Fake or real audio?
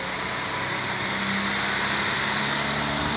real